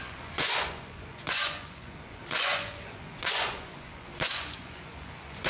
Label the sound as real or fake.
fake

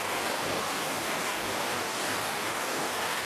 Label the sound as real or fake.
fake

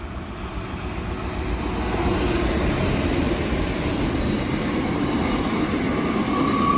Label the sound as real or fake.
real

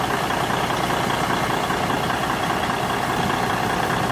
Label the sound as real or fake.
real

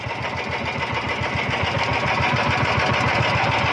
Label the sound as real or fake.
real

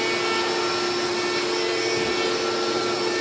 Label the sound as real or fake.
real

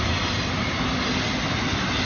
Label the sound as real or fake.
real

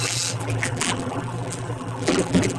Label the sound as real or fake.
fake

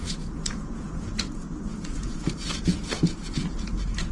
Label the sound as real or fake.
fake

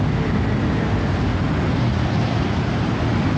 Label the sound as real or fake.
real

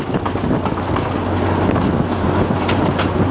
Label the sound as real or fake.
real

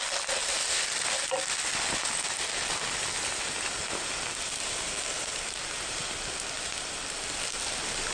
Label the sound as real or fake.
real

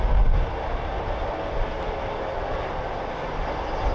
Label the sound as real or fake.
real